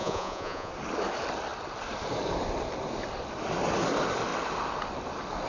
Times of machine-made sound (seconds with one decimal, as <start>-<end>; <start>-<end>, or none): 0.0-0.7